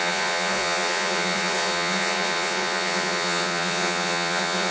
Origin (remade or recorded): remade